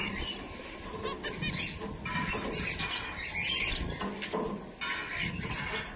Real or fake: real